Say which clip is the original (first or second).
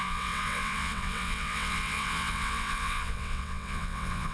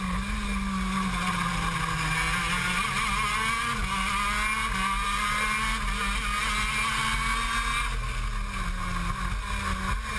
second